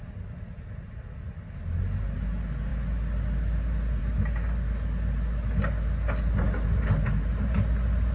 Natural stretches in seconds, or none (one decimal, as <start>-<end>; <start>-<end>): 0.0-8.1